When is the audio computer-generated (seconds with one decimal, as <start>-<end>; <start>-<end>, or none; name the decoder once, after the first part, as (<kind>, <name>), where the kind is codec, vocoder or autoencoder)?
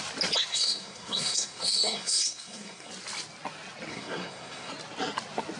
0.5-2.9 (codec, SNAC); 3.9-4.7